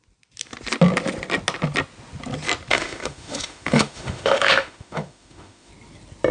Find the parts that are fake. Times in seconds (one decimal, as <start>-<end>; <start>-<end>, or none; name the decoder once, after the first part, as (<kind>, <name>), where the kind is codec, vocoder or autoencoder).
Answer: 2.7-5.7 (autoencoder, DAC-VAE)